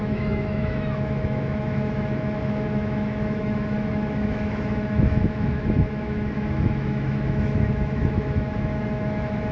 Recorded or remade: remade